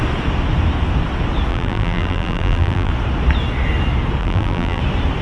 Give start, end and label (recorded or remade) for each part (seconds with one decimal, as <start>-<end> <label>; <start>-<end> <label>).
0.0-1.5 recorded; 1.5-2.9 remade; 2.9-4.2 recorded; 4.2-4.8 remade; 4.8-5.2 recorded